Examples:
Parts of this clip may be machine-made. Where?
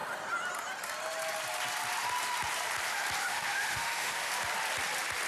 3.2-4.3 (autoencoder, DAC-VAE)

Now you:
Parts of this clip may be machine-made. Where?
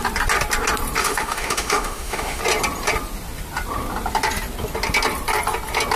1.0-2.4 (autoencoder, DAC-VAE)